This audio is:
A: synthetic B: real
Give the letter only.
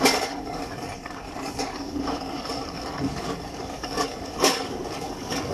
A